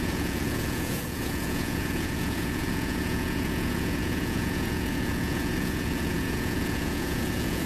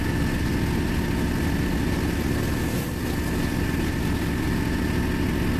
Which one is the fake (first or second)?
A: first